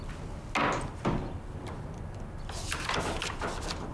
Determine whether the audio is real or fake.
real